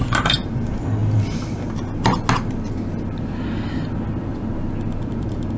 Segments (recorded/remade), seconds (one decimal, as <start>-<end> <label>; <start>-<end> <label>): 0.0-5.6 recorded